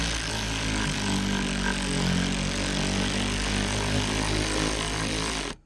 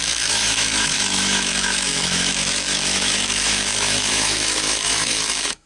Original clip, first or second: first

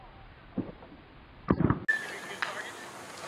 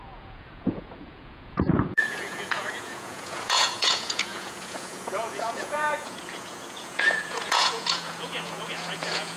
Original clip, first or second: first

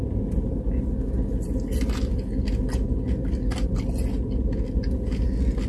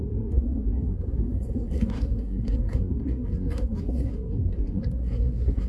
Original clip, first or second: first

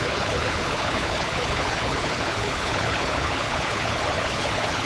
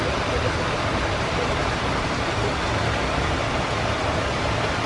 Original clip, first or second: second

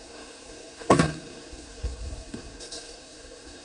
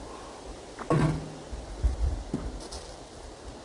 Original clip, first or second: second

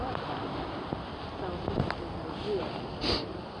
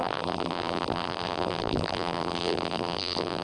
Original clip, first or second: first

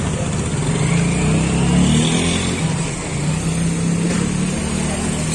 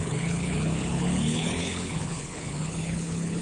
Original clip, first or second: first